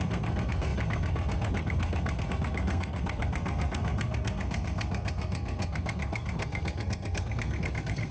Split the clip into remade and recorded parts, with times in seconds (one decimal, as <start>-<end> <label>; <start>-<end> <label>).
0.0-8.1 remade